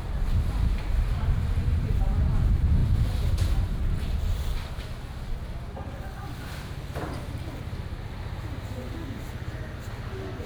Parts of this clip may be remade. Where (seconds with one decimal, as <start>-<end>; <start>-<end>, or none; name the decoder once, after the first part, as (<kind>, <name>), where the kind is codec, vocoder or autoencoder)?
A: none